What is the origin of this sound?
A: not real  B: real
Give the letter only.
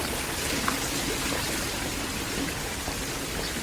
B